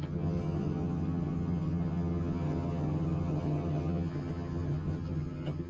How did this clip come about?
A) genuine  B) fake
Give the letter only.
B